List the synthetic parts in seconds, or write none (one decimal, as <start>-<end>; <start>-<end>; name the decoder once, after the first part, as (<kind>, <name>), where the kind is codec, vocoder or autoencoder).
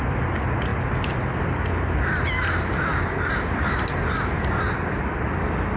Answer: none